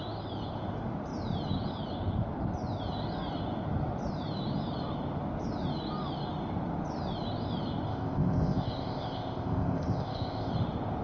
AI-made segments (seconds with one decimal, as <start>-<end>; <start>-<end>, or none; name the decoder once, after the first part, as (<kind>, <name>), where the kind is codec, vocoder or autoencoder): 7.9-10.5 (codec, ZipCodec)